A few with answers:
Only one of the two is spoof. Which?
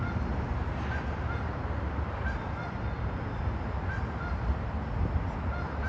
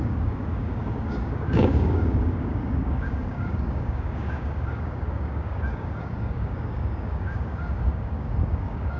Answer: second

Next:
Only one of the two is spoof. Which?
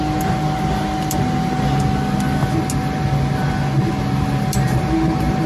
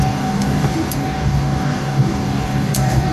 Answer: second